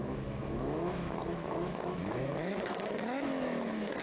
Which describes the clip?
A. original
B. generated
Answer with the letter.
B